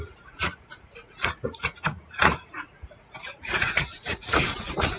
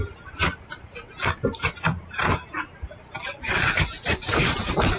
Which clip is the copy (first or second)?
first